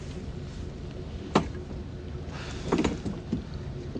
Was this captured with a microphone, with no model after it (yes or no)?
yes